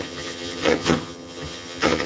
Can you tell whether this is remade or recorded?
remade